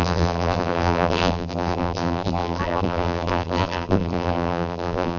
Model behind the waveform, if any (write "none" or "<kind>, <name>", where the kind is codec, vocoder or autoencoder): vocoder, BigVGAN v2